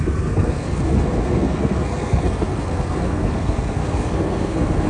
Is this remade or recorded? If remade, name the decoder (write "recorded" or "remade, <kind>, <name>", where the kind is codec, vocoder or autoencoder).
remade, codec, SNAC